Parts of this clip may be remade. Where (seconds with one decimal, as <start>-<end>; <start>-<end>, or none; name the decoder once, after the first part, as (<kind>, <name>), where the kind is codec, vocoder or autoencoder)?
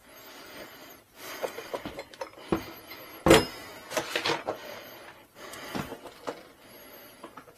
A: 0.8-2.2 (vocoder, BigVGAN v2); 4.6-5.3